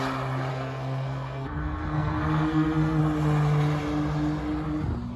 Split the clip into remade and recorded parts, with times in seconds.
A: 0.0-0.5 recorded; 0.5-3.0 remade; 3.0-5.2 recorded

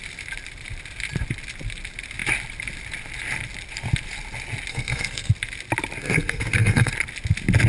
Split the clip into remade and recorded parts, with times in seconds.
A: 0.0-4.7 recorded; 4.7-5.3 remade; 5.3-6.0 recorded; 6.0-6.9 remade; 6.9-7.7 recorded

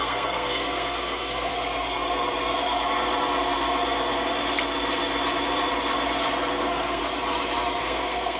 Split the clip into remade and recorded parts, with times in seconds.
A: 0.0-1.5 remade; 1.5-6.5 recorded; 6.5-7.0 remade; 7.0-7.8 recorded; 7.8-8.4 remade

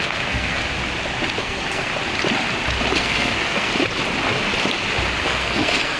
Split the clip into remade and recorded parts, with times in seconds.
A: 0.0-0.6 remade; 0.6-1.4 recorded; 1.4-1.9 remade; 1.9-3.0 recorded; 3.0-3.7 remade; 3.7-5.2 recorded; 5.2-6.0 remade